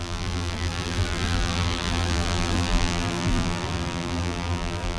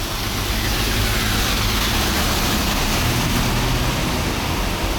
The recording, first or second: second